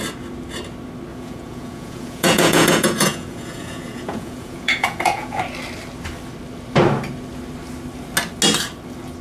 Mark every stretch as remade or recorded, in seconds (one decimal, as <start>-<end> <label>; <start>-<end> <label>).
0.0-1.1 recorded; 1.1-5.4 remade; 5.4-9.2 recorded